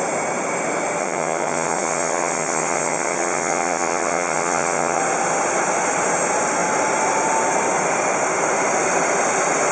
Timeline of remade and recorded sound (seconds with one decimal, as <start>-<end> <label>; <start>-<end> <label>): 0.0-1.0 recorded; 1.0-5.0 remade; 5.0-9.7 recorded